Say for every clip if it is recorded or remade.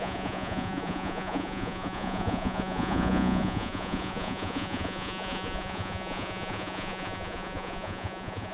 remade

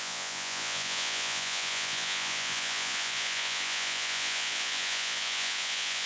remade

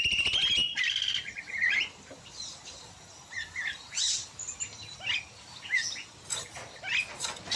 recorded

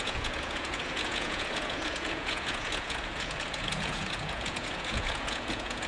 remade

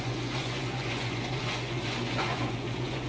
remade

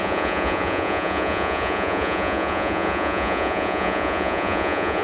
remade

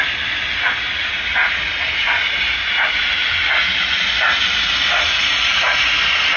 recorded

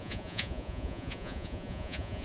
remade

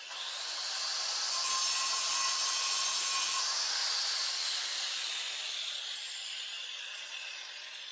recorded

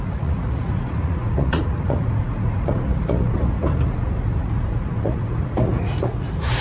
remade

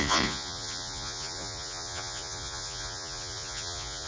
remade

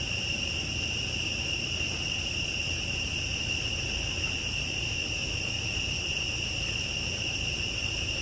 recorded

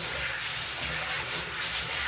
recorded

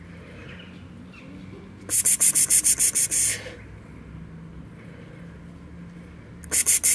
recorded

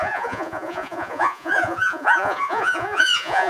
remade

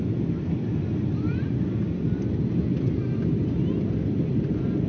recorded